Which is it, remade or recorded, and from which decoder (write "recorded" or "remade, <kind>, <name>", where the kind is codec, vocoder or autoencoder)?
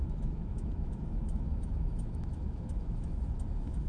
remade, autoencoder, DAC-VAE